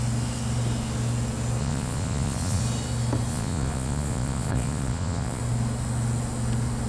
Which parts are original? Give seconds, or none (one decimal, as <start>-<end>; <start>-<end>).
0.0-1.6; 2.6-3.3; 5.4-6.9